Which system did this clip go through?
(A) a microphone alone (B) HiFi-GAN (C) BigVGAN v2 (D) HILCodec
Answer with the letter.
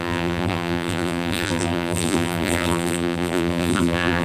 C